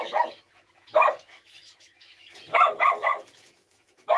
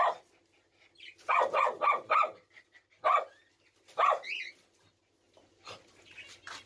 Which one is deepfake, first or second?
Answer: first